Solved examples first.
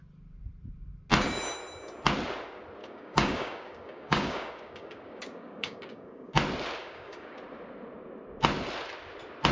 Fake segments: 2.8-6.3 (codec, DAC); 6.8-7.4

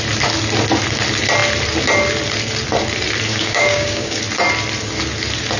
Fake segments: 3.3-4.2 (codec, DAC)

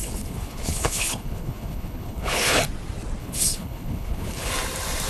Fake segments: 0.0-2.6 (codec, HILCodec); 3.2-4.5

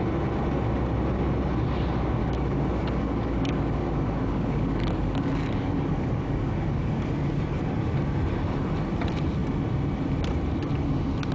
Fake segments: 2.2-7.4 (codec, DAC)

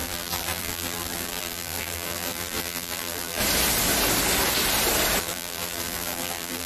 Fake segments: 0.0-3.4 (vocoder, BigVGAN v2); 5.2-6.7

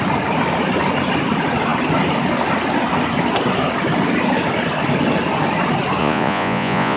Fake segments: 6.0-7.0 (vocoder, Vocos)

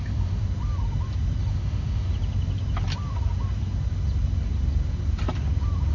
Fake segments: 0.0-0.4 (autoencoder, DAC-VAE); 1.5-2.1

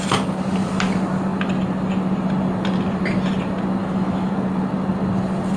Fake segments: 3.8-4.3 (autoencoder, DAC-VAE)